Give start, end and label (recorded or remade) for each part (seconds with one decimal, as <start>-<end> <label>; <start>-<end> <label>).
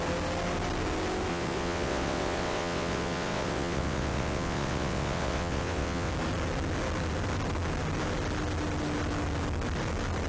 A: 0.0-1.3 recorded; 1.3-6.1 remade; 6.1-10.3 recorded